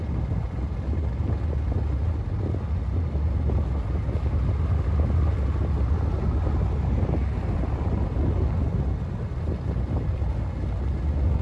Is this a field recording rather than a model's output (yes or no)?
yes